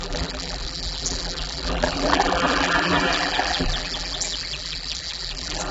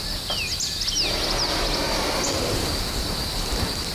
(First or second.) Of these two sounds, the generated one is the first